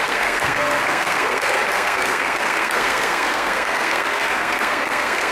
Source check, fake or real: fake